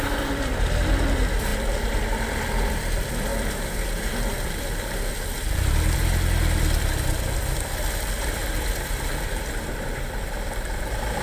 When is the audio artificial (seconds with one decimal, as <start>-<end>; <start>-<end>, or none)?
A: 0.0-8.4; 9.1-11.2

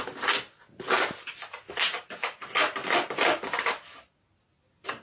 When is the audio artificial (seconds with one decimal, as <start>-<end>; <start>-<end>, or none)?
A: 0.7-1.3; 2.8-4.0

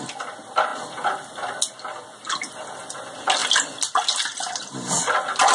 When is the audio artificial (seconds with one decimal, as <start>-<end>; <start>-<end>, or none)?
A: none

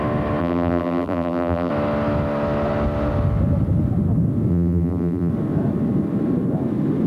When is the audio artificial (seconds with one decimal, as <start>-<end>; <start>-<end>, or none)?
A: 0.4-1.7; 4.5-5.3

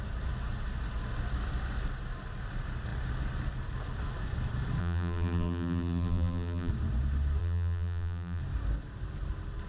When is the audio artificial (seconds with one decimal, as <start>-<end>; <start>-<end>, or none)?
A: 4.8-6.7; 7.4-8.4

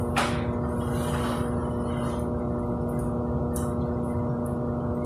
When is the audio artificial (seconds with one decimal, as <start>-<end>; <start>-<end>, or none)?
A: none

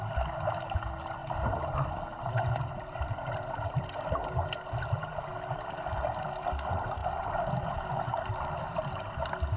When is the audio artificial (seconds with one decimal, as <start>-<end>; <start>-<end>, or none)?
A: 1.2-4.1; 7.0-7.9